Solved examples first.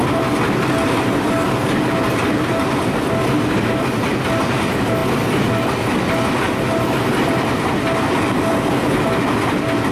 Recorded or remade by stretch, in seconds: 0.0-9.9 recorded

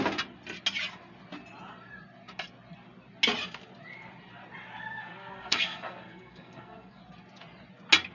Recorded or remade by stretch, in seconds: 0.0-4.8 recorded; 4.8-7.0 remade; 7.0-8.1 recorded

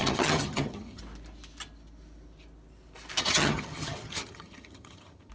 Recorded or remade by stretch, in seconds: 0.0-1.0 remade; 1.0-3.2 recorded; 3.2-5.3 remade